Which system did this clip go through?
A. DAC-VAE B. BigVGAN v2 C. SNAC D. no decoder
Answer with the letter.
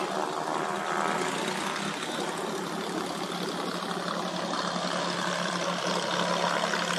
D